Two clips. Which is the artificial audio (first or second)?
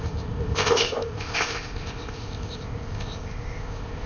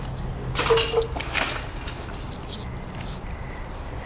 first